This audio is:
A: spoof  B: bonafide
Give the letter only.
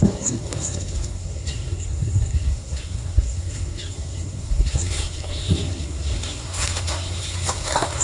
A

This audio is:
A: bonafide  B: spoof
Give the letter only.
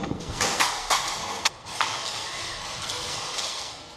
B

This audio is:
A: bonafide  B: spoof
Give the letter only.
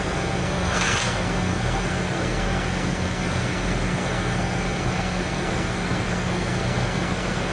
B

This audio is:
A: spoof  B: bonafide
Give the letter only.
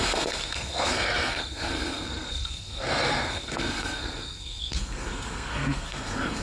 A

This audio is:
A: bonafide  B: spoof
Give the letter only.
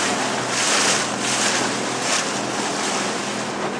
A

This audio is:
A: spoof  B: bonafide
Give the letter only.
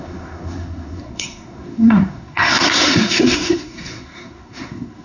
A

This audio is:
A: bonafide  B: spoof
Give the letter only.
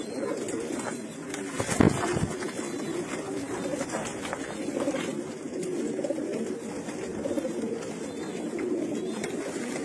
A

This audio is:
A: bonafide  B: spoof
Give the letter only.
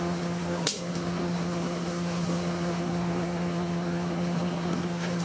B